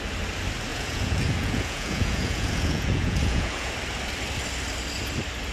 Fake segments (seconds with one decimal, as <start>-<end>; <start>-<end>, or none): 0.7-3.7

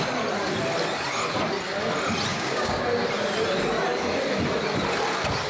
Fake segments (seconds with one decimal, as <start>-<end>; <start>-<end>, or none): 2.3-2.8